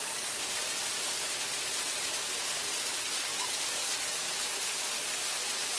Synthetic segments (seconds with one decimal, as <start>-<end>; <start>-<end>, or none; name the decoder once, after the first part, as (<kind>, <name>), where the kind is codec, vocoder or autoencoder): 0.0-0.6 (codec, DAC); 3.3-4.3